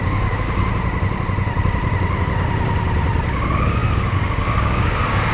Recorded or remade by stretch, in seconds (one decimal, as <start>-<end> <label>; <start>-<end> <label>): 0.0-0.7 remade; 0.7-3.2 recorded; 3.2-5.3 remade